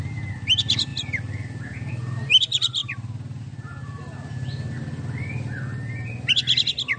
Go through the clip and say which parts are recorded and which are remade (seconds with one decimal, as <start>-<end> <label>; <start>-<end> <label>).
0.0-7.0 recorded